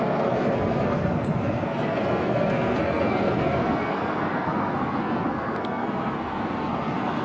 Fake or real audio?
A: fake